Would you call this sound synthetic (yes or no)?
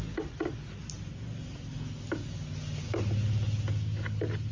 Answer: no